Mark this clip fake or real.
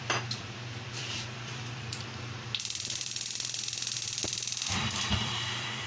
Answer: fake